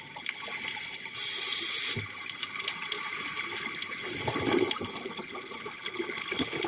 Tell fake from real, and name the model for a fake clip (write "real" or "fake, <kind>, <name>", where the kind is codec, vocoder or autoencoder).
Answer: real